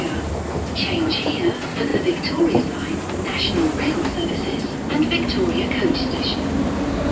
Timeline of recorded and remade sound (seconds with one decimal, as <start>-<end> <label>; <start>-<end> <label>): 0.0-1.9 recorded; 1.9-6.2 remade; 6.2-7.1 recorded

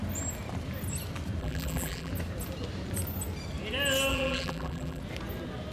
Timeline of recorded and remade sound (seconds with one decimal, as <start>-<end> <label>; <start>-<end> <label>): 0.0-1.4 recorded; 1.4-2.1 remade; 2.1-4.1 recorded; 4.1-5.0 remade; 5.0-5.7 recorded